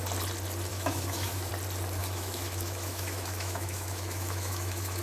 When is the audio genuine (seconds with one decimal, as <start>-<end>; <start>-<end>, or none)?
0.0-0.7; 1.5-2.0

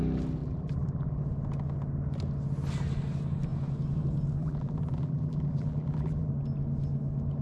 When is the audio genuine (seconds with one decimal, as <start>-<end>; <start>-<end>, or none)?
0.0-0.4; 1.2-4.4; 6.3-7.4